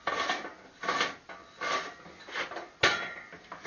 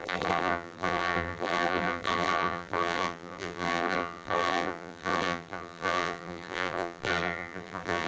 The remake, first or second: second